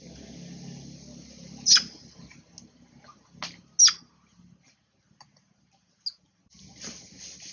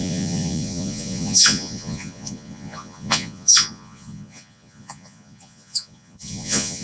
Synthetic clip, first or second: second